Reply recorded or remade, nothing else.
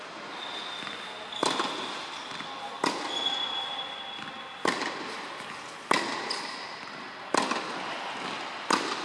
recorded